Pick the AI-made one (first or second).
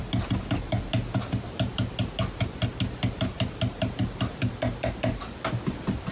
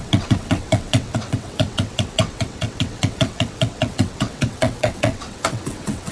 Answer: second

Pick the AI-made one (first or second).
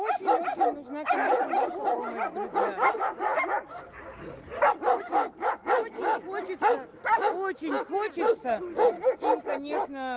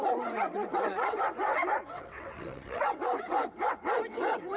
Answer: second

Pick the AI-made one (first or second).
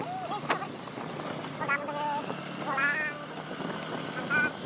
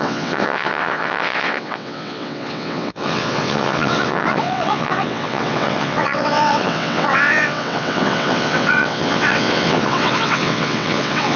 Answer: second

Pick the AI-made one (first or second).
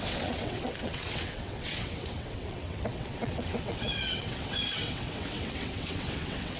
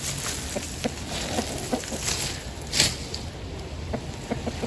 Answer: first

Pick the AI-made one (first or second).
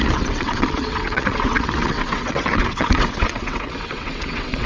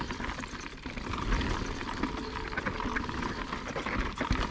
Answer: first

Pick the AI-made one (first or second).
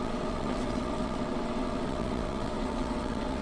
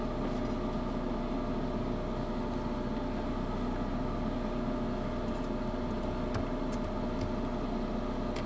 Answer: first